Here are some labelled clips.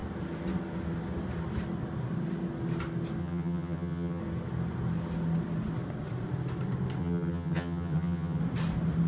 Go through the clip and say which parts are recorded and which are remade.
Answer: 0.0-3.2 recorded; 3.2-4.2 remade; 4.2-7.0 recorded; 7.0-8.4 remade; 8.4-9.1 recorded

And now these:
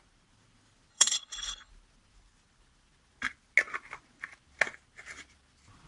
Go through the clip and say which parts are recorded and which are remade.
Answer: 0.0-0.9 recorded; 0.9-1.7 remade; 1.7-5.9 recorded

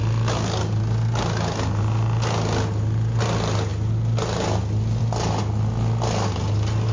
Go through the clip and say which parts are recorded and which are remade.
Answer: 0.0-6.9 recorded